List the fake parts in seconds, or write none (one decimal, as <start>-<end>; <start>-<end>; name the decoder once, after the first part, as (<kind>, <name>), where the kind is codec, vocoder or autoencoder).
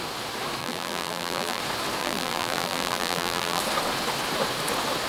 0.6-1.6 (vocoder, BigVGAN v2); 2.0-3.6